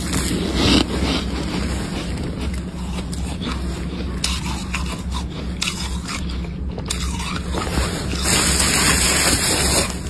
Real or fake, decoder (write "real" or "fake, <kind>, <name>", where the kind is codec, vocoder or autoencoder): real